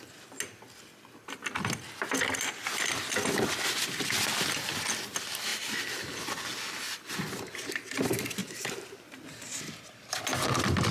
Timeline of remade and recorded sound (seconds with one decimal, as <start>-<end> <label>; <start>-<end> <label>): 0.0-5.5 recorded; 5.5-6.1 remade; 6.1-8.4 recorded; 8.4-9.3 remade; 9.3-10.9 recorded